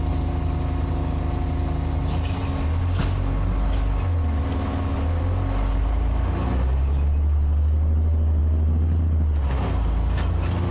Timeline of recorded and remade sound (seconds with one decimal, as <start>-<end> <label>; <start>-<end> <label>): 0.0-10.7 recorded